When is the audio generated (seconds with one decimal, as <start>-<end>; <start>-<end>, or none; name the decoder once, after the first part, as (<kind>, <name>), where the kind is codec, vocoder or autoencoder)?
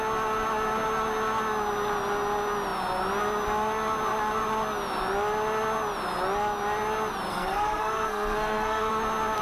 7.3-8.9 (codec, SNAC)